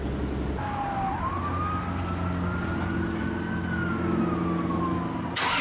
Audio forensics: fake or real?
real